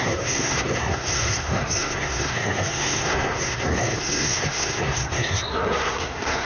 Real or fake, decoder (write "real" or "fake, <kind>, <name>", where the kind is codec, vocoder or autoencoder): fake, codec, SNAC